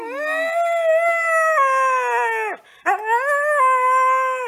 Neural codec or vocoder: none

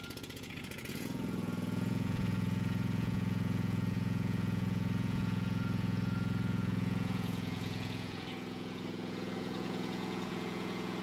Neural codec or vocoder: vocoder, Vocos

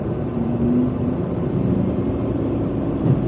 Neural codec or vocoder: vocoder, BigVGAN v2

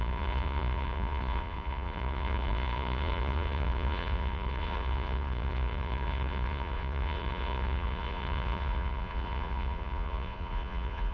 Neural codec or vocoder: vocoder, Vocos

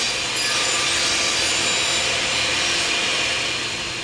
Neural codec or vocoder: none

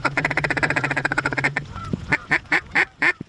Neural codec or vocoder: vocoder, Vocos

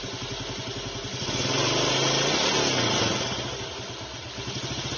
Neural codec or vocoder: none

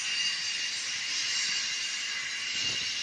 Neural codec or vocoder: none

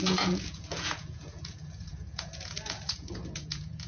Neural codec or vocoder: vocoder, Vocos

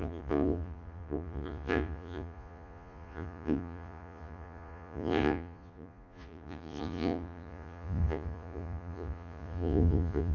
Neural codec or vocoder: vocoder, Vocos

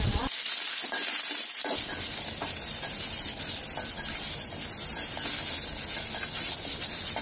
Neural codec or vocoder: vocoder, BigVGAN v2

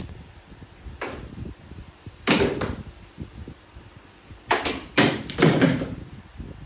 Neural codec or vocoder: vocoder, BigVGAN v2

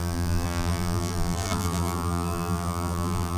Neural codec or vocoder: vocoder, BigVGAN v2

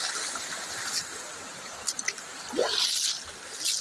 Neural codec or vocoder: none